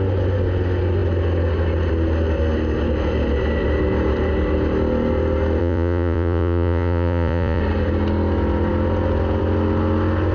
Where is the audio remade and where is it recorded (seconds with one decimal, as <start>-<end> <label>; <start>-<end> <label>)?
0.0-5.6 recorded; 5.6-7.6 remade; 7.6-10.3 recorded